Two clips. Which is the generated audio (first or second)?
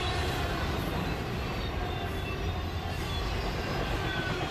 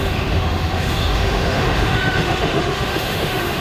second